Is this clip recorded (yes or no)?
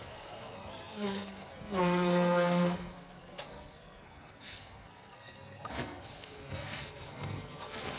no